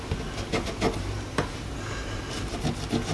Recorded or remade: recorded